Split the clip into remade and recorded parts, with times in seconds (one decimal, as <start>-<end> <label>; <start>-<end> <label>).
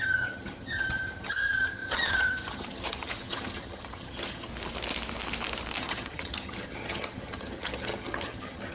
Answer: 0.0-4.5 remade; 4.5-5.8 recorded; 5.8-8.7 remade